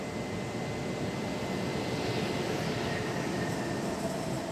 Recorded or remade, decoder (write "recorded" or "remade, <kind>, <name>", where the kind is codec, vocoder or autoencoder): recorded